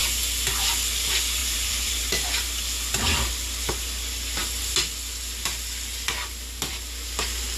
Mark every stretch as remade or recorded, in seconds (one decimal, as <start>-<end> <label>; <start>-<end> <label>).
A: 0.0-1.4 recorded; 1.4-2.0 remade; 2.0-7.6 recorded